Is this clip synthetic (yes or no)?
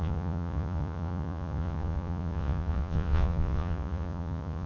yes